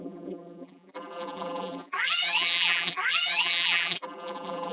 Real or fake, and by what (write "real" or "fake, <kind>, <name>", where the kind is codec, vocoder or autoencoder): fake, vocoder, BigVGAN v2